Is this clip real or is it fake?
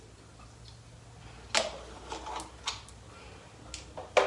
real